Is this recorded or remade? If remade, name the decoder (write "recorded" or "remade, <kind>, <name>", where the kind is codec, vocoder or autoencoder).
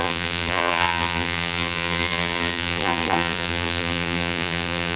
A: remade, vocoder, BigVGAN v2